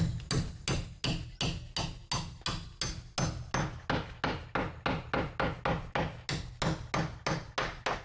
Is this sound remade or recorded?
recorded